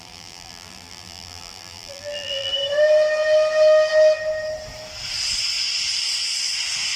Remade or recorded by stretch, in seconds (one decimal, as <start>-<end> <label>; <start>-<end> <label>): 0.0-2.5 remade; 2.5-7.0 recorded